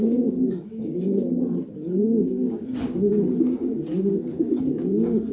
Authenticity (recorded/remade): remade